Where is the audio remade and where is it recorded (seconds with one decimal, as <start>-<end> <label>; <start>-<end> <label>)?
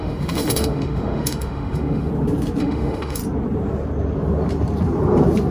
0.0-2.1 remade; 2.1-2.6 recorded; 2.6-3.2 remade; 3.2-5.5 recorded